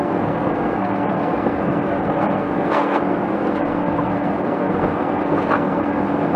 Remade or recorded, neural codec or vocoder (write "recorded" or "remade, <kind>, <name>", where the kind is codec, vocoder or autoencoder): remade, codec, SNAC